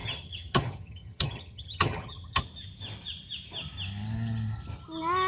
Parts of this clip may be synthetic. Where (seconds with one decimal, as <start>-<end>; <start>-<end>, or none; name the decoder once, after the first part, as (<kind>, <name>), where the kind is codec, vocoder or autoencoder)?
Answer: 0.0-2.4 (vocoder, HiFi-GAN)